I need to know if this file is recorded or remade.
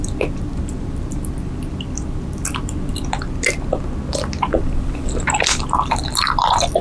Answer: recorded